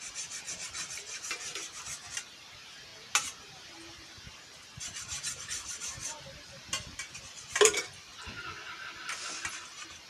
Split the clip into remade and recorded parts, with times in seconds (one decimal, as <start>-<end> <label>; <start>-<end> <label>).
0.0-1.5 remade; 1.5-2.3 recorded; 2.3-2.9 remade; 2.9-3.4 recorded; 3.4-8.1 remade; 8.1-9.5 recorded; 9.5-10.1 remade